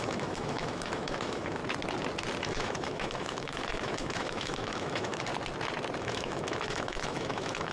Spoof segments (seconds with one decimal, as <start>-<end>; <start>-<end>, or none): 0.0-1.6; 2.4-5.3; 6.0-7.7